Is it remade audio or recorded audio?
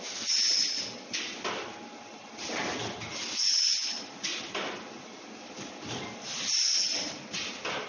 recorded